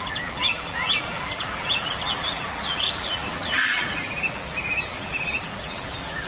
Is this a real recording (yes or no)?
no